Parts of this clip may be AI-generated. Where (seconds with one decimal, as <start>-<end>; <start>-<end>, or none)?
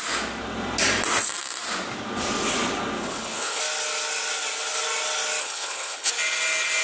3.0-3.6; 5.4-6.1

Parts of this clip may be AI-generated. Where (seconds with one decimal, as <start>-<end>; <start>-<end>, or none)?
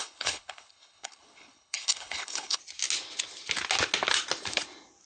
0.0-2.6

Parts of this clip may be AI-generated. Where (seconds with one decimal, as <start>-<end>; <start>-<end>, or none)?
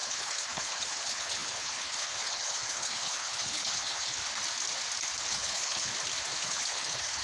0.0-4.2; 5.2-5.9; 6.4-7.2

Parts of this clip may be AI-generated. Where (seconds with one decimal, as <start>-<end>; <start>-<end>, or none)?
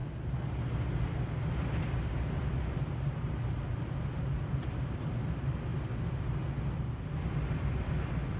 none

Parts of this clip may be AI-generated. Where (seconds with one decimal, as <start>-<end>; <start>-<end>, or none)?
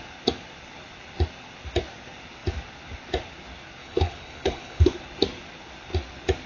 3.8-4.8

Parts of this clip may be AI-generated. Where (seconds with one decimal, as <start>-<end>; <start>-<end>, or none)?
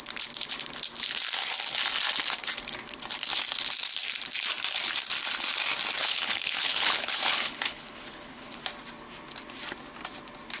6.0-8.6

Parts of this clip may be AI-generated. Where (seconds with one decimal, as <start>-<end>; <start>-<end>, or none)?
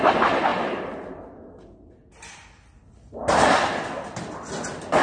none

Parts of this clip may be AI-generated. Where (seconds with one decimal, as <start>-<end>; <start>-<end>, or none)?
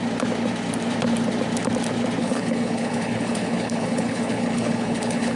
2.2-5.4